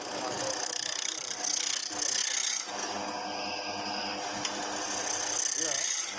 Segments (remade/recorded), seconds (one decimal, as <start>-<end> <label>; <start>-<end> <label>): 0.0-6.2 recorded